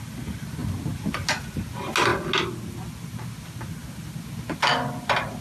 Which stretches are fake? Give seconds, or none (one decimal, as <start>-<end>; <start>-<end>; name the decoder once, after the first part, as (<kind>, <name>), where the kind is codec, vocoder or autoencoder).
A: none